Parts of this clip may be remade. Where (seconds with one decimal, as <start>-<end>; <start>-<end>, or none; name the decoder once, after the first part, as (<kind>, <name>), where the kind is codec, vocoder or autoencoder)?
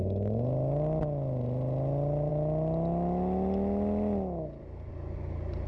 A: none